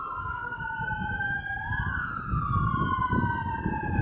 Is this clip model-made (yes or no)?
no